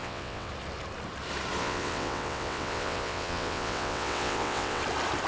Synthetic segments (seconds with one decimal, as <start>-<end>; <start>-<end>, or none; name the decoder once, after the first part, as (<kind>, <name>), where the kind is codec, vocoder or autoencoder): 0.0-0.5 (vocoder, WaveNeXt); 1.6-4.8